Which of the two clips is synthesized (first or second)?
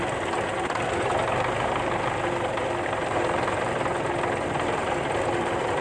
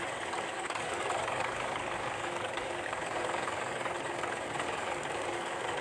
second